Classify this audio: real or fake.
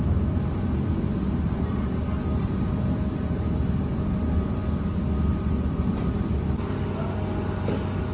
real